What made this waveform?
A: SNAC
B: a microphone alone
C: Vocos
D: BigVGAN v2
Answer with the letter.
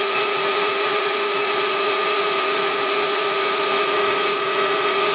C